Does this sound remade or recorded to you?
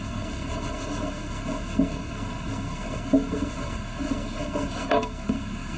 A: remade